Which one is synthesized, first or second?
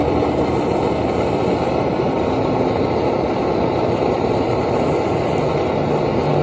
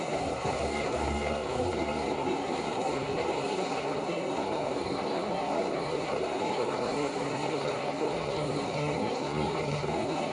second